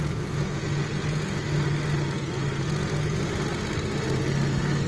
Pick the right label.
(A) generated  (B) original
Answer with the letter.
B